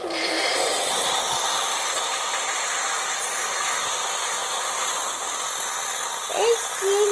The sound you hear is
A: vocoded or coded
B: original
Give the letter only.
B